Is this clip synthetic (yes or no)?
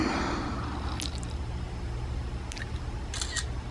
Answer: no